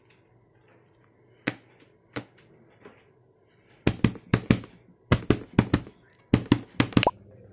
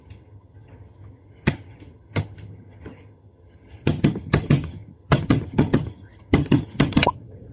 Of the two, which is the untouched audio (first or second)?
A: first